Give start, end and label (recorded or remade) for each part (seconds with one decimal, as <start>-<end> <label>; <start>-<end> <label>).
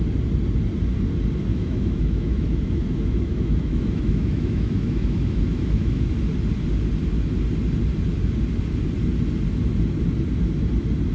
0.0-1.5 recorded; 1.5-6.1 remade; 6.1-11.1 recorded